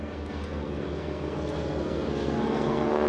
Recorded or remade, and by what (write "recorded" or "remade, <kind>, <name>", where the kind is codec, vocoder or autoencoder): remade, codec, SNAC